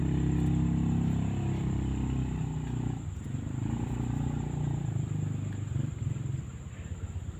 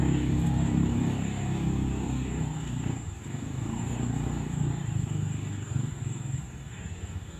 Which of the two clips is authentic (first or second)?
first